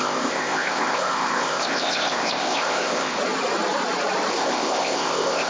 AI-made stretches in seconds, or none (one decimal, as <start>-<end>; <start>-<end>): 0.0-3.2; 4.3-5.5